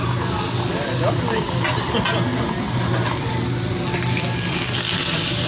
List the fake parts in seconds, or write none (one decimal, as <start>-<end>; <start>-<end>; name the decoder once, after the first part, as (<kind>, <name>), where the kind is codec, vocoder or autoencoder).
none